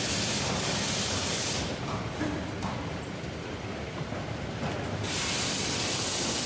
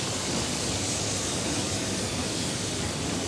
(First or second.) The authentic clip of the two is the first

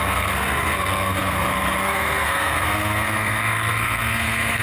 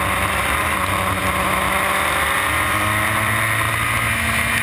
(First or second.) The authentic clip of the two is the second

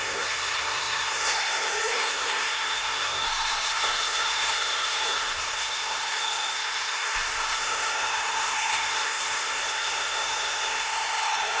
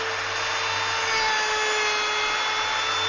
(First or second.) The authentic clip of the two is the second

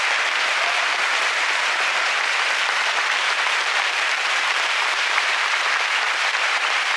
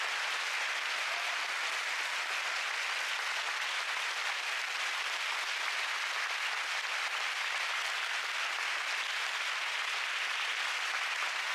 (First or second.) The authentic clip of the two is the second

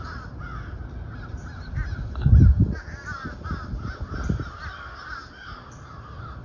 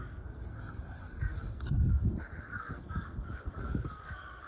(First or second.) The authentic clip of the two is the first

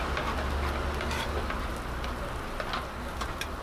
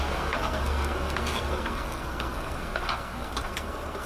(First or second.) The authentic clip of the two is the first